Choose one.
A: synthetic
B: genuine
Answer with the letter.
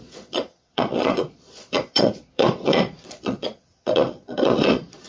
A